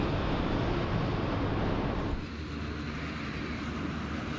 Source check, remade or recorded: recorded